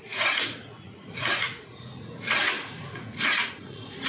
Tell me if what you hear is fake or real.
fake